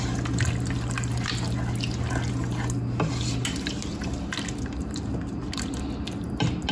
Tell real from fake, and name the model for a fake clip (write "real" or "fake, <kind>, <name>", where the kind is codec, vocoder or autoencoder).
real